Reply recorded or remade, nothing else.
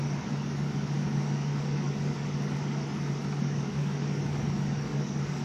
remade